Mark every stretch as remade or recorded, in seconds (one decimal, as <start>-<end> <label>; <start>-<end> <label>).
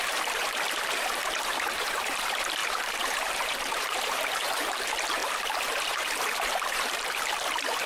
0.0-5.2 remade; 5.2-5.7 recorded; 5.7-7.9 remade